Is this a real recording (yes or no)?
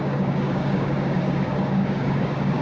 no